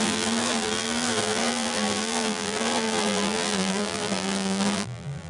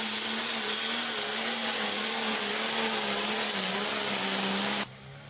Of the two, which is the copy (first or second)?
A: first